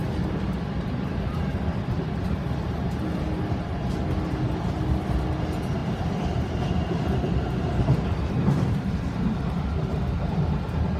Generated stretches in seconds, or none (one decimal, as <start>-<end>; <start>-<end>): 5.8-6.6